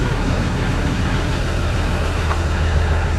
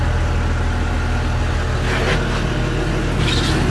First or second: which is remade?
first